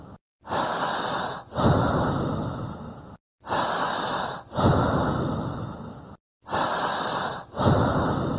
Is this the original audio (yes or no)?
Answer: yes